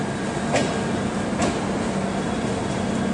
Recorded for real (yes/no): yes